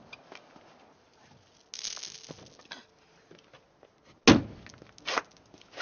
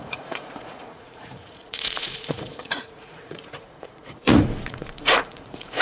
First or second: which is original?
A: first